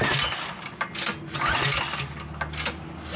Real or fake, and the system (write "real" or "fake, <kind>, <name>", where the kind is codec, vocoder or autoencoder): real